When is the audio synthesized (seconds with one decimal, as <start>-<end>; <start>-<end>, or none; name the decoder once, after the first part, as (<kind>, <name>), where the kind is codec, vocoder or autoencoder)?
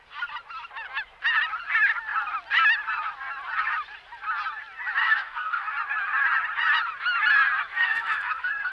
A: 5.0-5.7 (codec, SNAC); 7.7-8.7